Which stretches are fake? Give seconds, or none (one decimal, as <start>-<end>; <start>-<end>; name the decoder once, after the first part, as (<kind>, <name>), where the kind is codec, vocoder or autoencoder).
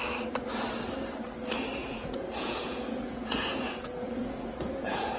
1.8-5.2 (vocoder, Vocos)